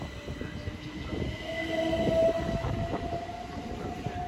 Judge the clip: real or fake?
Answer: real